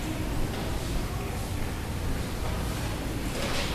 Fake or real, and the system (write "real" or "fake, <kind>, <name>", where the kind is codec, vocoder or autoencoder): real